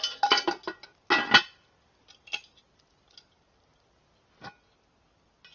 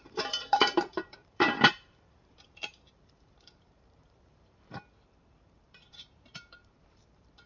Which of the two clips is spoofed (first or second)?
second